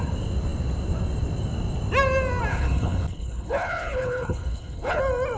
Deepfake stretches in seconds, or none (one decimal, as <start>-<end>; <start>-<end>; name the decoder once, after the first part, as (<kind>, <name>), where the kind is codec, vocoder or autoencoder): 2.5-5.0 (codec, HILCodec)